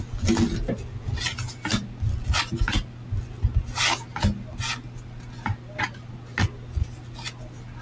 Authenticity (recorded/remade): recorded